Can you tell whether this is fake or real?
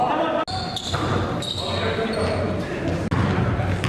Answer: real